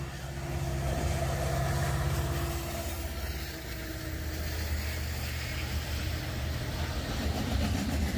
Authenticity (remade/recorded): recorded